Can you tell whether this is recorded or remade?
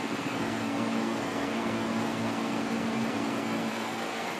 remade